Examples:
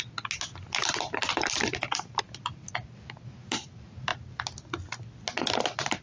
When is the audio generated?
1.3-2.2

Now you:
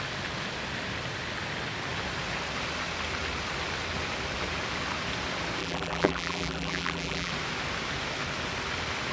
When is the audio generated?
5.6-7.3

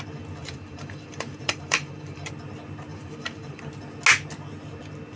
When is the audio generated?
0.4-2.3; 2.9-3.6

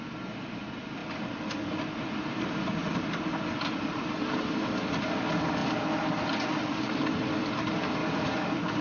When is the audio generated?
0.0-8.8

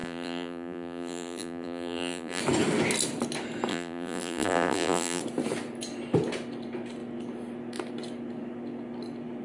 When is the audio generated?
0.0-2.4; 3.7-5.2

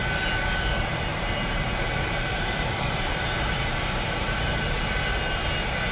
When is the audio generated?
1.1-4.6